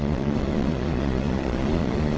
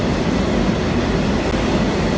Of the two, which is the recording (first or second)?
second